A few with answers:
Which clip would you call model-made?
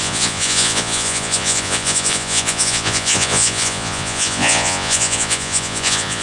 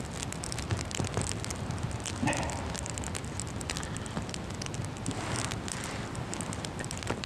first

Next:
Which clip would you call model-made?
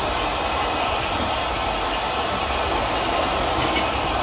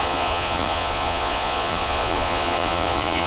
second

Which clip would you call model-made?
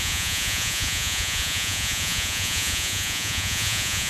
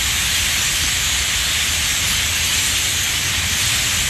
first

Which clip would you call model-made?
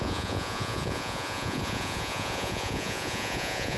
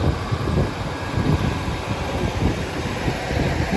first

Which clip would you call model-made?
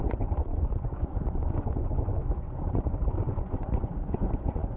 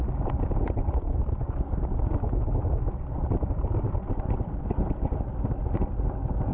first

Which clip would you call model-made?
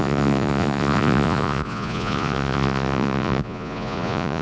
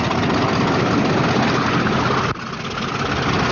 first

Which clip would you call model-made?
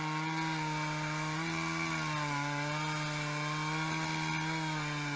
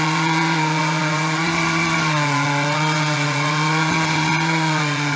second